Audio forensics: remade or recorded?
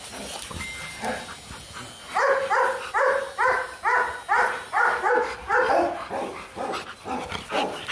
recorded